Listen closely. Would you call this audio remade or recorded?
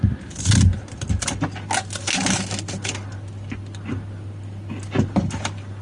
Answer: recorded